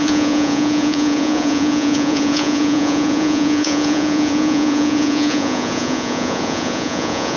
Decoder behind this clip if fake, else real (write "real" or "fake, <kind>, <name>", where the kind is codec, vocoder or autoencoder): fake, vocoder, Vocos